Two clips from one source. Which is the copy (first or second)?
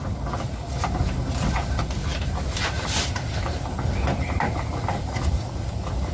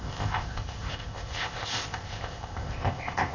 second